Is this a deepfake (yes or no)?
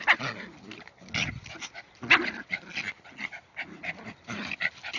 no